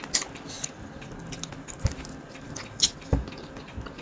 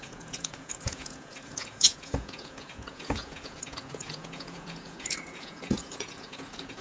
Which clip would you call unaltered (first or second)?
first